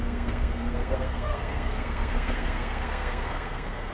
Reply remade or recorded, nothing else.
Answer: remade